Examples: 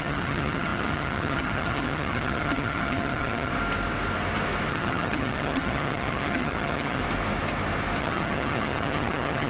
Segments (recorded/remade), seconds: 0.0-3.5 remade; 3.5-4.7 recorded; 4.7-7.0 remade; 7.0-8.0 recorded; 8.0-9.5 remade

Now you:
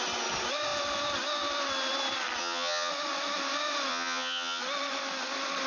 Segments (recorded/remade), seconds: 0.0-2.4 recorded; 2.4-2.9 remade; 2.9-3.9 recorded; 3.9-4.6 remade; 4.6-5.7 recorded

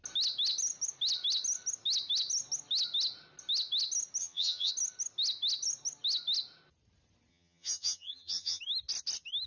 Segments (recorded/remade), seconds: 0.0-4.2 recorded; 4.2-4.7 remade; 4.7-7.3 recorded; 7.3-8.6 remade; 8.6-9.5 recorded

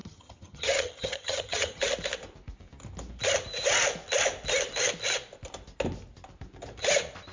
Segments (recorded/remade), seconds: 0.0-1.8 remade; 1.8-7.3 recorded

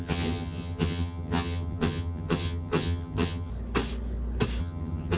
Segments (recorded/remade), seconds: 0.0-3.5 remade; 3.5-4.6 recorded; 4.6-5.2 remade